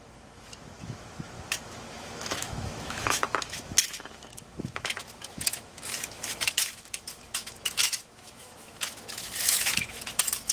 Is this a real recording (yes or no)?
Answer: no